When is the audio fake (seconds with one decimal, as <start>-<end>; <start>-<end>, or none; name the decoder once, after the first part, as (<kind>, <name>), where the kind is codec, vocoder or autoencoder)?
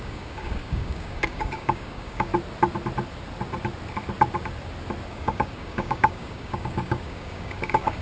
0.0-2.3 (codec, DAC); 5.1-8.0